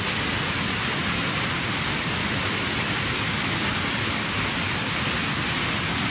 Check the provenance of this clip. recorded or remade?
recorded